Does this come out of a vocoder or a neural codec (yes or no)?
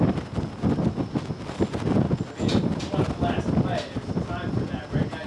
no